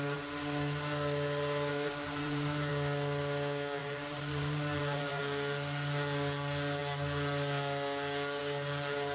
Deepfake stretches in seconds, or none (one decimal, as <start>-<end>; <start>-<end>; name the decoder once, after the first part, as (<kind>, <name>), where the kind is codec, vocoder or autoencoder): 1.7-2.7 (vocoder, BigVGAN v2); 3.8-5.2